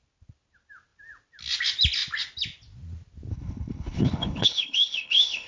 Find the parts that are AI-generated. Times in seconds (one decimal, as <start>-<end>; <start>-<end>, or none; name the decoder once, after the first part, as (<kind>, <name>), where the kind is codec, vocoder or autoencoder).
3.3-5.5 (codec, HILCodec)